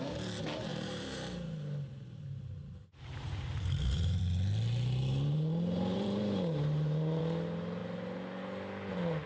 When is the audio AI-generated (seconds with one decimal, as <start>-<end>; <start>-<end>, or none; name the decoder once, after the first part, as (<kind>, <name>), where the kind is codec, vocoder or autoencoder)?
0.7-4.2 (vocoder, BigVGAN v2); 5.1-7.2

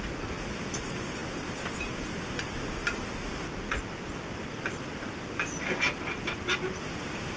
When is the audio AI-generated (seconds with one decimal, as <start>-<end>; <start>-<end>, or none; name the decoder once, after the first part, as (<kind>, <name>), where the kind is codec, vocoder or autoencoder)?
none